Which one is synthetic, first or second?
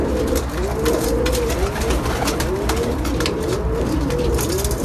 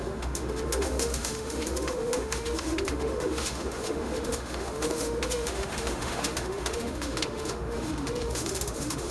second